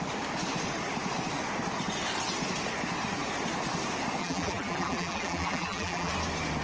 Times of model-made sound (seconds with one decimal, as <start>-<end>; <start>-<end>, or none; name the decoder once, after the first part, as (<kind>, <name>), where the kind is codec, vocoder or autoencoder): 4.2-6.1 (vocoder, BigVGAN v2)